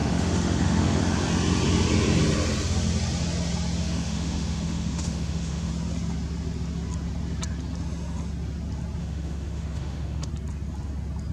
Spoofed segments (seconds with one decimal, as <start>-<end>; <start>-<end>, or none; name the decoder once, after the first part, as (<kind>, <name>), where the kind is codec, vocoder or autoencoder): 0.0-1.0 (autoencoder, DAC-VAE); 3.8-5.7; 9.0-10.3